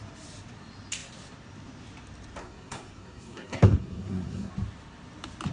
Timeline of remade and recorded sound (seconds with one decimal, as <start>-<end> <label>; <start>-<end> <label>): 0.0-2.4 recorded; 2.4-4.5 remade; 4.5-5.5 recorded

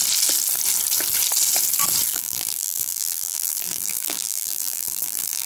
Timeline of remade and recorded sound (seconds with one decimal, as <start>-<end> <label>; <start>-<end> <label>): 0.0-2.1 recorded; 2.1-5.5 remade